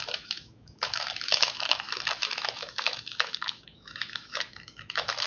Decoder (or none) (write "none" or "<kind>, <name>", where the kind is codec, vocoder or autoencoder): autoencoder, DAC-VAE